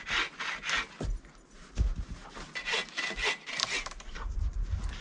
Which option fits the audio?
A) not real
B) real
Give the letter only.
B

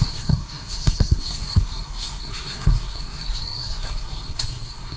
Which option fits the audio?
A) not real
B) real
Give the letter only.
A